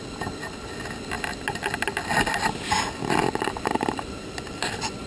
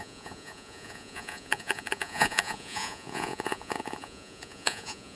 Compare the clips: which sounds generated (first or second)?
second